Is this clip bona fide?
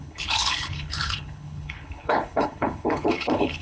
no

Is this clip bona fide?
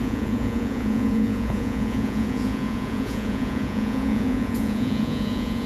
no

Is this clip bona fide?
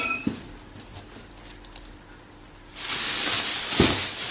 yes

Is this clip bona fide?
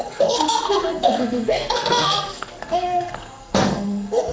no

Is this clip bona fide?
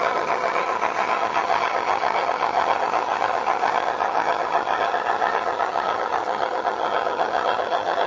no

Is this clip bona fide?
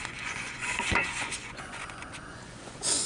no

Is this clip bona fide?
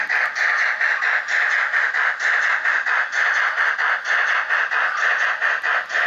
yes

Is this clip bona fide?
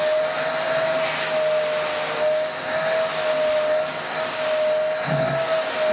yes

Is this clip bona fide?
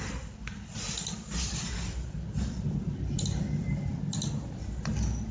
yes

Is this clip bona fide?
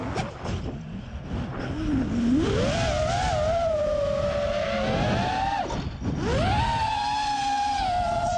yes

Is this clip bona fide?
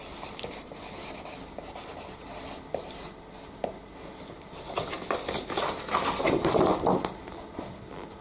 yes